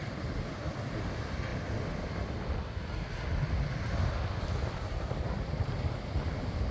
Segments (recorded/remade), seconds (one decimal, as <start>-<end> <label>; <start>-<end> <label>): 0.0-6.7 recorded